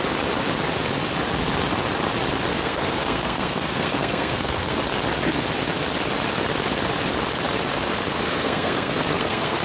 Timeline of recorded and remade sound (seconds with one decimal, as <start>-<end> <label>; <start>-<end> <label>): 0.0-2.5 recorded; 2.5-4.8 remade; 4.8-8.1 recorded; 8.1-9.6 remade